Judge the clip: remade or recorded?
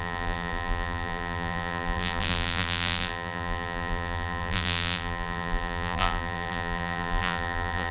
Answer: remade